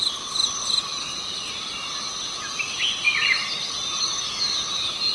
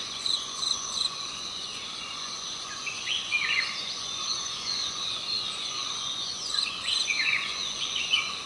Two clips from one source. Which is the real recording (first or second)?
first